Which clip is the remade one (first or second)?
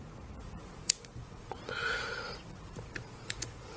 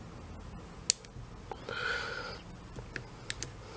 first